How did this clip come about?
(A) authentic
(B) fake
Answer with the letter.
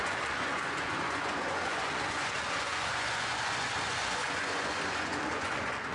B